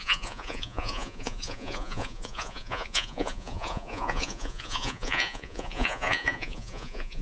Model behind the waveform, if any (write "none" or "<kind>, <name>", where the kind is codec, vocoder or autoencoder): vocoder, Vocos